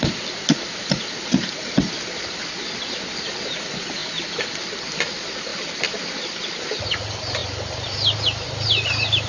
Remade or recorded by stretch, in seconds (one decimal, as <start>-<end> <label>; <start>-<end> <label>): 0.0-4.0 recorded; 4.0-4.6 remade; 4.6-9.3 recorded